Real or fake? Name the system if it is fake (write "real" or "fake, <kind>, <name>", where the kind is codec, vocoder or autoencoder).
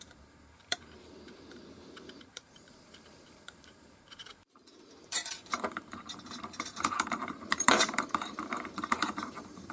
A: fake, vocoder, BigVGAN v2